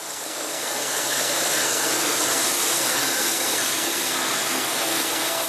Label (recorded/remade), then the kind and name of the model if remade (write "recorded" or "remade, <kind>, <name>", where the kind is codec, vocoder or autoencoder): remade, codec, SNAC